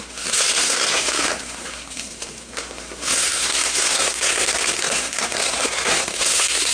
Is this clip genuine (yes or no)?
no